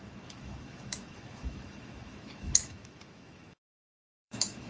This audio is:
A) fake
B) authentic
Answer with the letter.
A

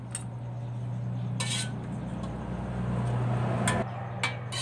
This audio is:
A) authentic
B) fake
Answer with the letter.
A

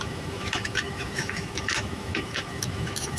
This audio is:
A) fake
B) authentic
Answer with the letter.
A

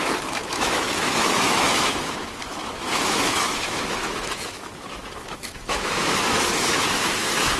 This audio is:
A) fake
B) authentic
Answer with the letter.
A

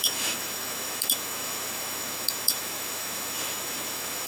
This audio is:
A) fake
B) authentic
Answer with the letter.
A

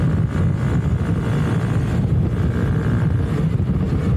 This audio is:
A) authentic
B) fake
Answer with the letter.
A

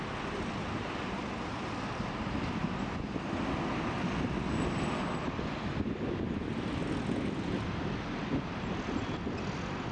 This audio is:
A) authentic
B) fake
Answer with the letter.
A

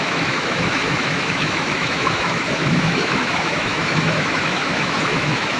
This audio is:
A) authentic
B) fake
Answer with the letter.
B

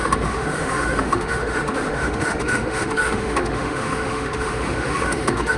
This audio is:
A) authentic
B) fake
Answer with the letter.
B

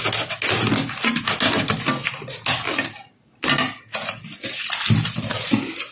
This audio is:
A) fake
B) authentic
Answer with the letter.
B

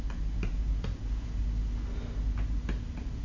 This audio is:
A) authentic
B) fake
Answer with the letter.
A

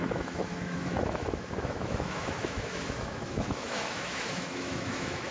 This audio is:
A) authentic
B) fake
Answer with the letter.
B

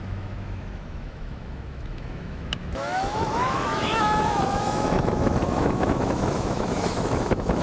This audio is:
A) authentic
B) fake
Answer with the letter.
B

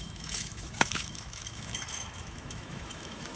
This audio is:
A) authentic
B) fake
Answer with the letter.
B